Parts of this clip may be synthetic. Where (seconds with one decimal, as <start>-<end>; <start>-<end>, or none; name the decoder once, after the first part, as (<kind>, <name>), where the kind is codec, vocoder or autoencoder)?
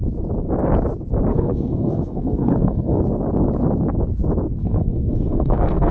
1.3-3.0 (codec, SNAC); 4.6-5.9